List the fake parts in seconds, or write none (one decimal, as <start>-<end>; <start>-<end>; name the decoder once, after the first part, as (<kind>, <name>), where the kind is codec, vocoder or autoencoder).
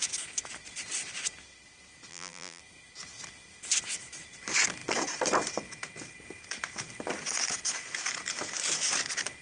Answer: 2.1-2.6 (vocoder, BigVGAN v2)